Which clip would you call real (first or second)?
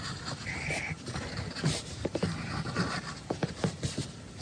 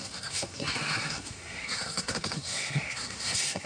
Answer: first